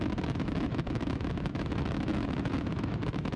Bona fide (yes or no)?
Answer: no